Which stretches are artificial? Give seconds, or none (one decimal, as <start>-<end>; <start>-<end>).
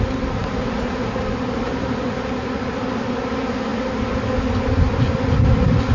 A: 0.4-2.6